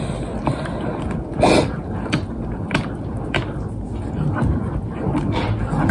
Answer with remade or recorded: recorded